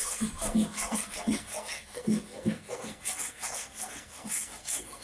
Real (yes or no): no